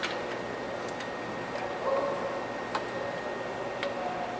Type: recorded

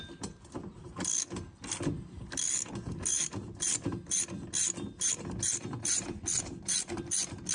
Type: recorded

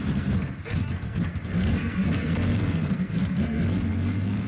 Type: remade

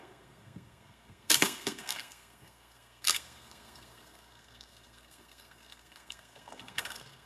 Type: remade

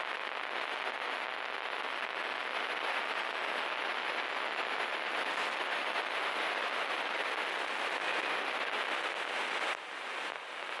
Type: recorded